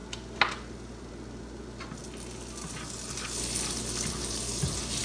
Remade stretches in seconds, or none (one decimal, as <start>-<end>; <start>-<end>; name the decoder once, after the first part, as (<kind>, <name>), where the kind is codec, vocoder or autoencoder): none